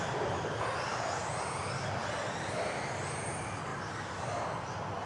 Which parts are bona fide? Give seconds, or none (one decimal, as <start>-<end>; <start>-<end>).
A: 0.0-5.1